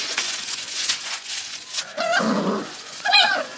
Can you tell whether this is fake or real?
fake